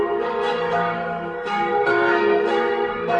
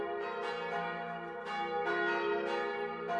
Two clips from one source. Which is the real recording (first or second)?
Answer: second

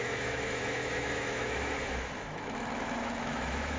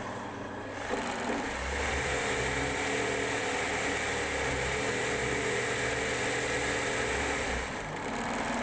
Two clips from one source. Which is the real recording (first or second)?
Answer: second